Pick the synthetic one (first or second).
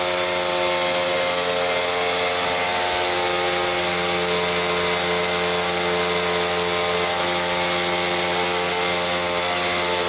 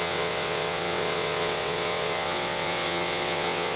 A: second